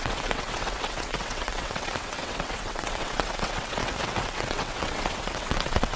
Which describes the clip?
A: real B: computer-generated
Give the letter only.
B